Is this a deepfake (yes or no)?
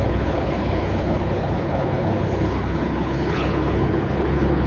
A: yes